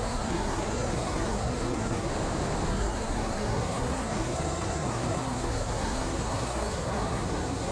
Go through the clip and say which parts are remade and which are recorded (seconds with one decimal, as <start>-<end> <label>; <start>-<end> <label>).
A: 0.0-2.1 remade; 2.1-2.7 recorded; 2.7-7.7 remade